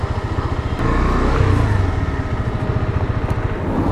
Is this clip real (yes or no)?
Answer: yes